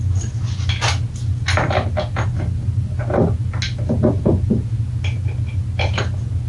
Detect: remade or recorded recorded